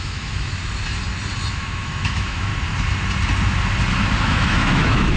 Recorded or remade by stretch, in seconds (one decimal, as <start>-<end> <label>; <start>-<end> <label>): 0.0-0.6 remade; 0.6-1.5 recorded; 1.5-2.5 remade; 2.5-4.2 recorded; 4.2-5.2 remade